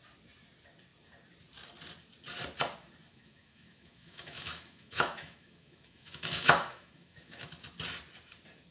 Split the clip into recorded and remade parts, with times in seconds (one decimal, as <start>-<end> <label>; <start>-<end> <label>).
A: 0.0-3.1 recorded; 3.1-7.5 remade; 7.5-8.7 recorded